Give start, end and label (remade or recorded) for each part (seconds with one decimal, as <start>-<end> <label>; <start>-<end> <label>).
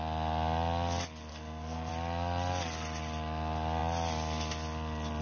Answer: 0.0-1.3 recorded; 1.3-1.9 remade; 1.9-5.2 recorded